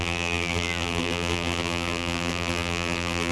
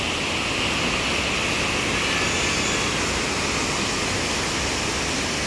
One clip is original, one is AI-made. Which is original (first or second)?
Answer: second